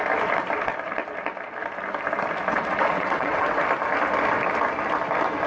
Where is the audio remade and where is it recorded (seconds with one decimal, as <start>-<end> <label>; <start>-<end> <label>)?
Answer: 0.0-2.5 recorded; 2.5-3.6 remade; 3.6-5.5 recorded